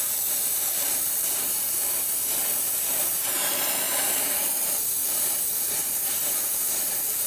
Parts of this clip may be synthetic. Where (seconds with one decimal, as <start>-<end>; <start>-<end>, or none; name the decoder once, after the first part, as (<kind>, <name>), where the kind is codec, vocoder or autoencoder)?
0.0-1.5 (vocoder, BigVGAN v2); 3.9-5.0; 6.1-7.3